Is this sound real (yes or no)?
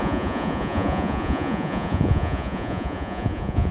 no